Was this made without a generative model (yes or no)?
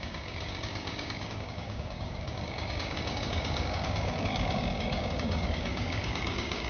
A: no